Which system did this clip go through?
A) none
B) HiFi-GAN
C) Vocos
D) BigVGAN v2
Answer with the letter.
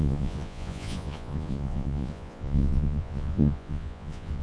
C